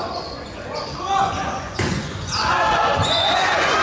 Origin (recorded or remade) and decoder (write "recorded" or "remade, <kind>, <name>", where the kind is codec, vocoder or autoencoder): remade, vocoder, Vocos